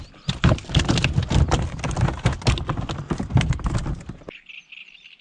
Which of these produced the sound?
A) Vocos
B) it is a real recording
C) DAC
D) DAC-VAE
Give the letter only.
B